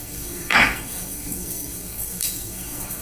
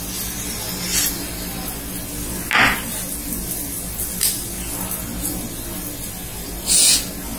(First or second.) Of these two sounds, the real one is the second